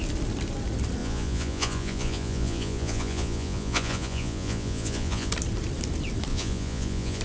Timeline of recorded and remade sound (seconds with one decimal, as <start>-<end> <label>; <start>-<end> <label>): 0.0-1.0 recorded; 1.0-5.3 remade; 5.3-6.3 recorded; 6.3-7.2 remade